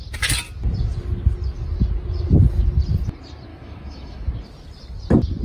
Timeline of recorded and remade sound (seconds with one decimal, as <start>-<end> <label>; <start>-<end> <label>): 0.0-3.5 recorded; 3.5-4.3 remade; 4.3-5.4 recorded